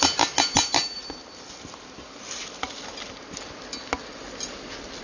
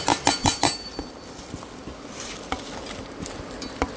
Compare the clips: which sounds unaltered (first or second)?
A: first